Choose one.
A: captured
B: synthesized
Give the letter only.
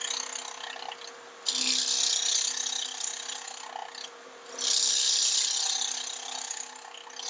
A